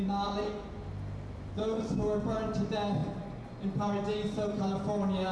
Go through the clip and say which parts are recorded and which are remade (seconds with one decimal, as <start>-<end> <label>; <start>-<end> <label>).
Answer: 0.0-5.3 recorded